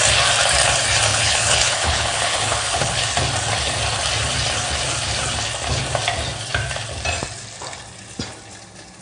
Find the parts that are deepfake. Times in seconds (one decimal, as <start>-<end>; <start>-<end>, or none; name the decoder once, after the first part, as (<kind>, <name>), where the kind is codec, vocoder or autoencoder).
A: 1.1-3.0 (codec, HILCodec)